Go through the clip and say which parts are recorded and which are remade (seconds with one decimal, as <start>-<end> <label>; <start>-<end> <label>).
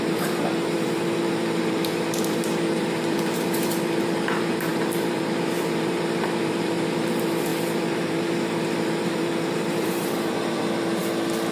0.0-11.0 remade; 11.0-11.5 recorded